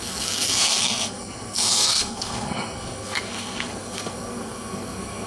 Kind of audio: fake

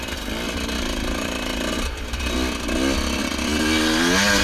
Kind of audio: real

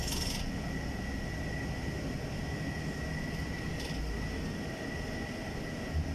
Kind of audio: real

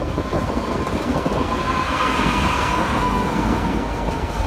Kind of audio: fake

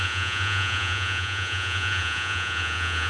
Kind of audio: fake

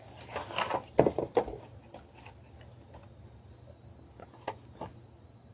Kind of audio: real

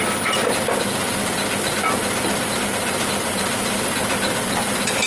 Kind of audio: real